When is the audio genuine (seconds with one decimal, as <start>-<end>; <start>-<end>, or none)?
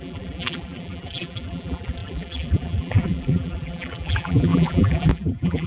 none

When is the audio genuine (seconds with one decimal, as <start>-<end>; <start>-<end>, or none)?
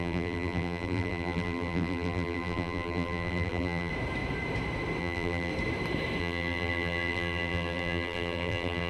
3.9-5.0; 5.5-6.2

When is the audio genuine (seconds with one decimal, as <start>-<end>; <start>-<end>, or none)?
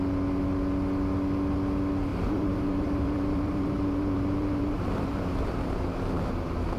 0.0-2.1; 6.2-6.8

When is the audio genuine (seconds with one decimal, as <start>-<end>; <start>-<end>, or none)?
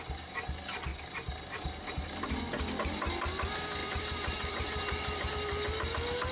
0.0-0.9; 1.9-3.8; 5.3-6.3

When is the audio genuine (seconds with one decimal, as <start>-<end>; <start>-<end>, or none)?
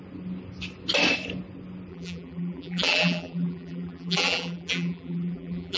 0.0-1.9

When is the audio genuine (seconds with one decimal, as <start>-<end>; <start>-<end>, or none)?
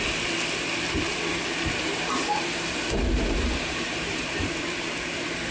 0.0-1.3; 4.6-5.5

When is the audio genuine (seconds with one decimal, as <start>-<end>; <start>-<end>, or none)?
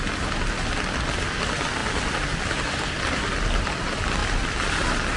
0.0-1.8; 3.6-5.2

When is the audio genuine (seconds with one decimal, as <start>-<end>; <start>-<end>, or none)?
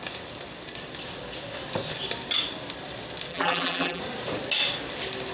0.0-3.3; 4.0-5.3